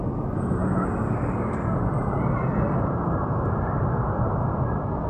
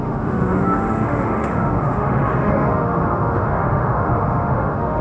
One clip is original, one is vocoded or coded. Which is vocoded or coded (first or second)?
second